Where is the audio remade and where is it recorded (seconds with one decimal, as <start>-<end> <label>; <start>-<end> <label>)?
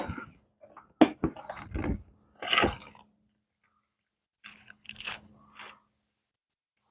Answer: 0.0-4.5 recorded; 4.5-5.3 remade; 5.3-6.9 recorded